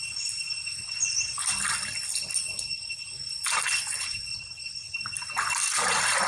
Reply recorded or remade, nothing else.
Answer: recorded